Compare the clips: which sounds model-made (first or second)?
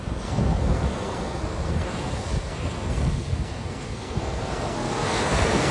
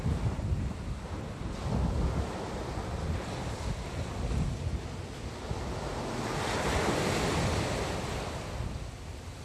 first